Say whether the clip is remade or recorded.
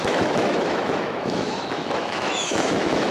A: remade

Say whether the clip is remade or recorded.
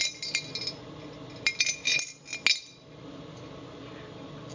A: recorded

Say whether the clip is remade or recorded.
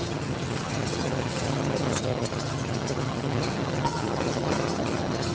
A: remade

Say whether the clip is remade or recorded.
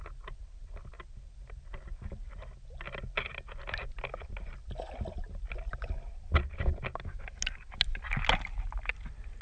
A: recorded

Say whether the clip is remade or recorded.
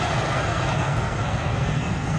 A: remade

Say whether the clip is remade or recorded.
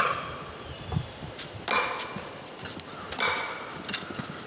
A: recorded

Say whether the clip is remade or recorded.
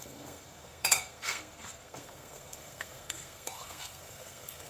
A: remade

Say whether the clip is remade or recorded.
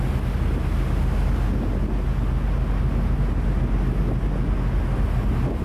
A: recorded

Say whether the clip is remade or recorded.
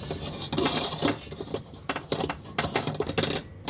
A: recorded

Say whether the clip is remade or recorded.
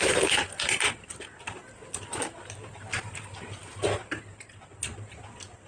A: recorded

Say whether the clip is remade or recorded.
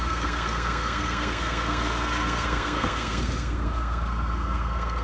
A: remade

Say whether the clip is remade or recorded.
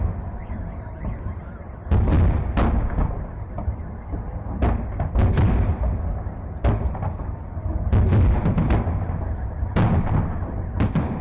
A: recorded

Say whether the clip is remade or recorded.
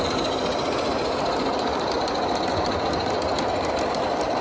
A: recorded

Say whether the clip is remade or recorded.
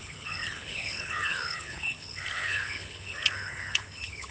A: remade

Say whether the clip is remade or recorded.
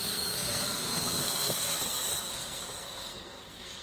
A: remade